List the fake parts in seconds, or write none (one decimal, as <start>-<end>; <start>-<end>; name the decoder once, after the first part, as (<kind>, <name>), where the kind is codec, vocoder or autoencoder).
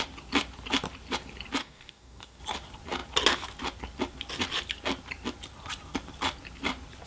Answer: 1.6-2.4 (codec, DAC)